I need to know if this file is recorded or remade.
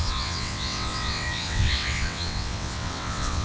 remade